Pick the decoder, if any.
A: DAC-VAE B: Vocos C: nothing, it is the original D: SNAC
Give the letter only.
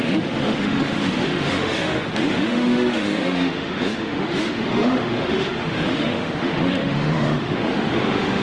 A